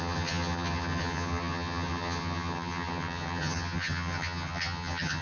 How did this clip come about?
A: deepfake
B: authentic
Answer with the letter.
A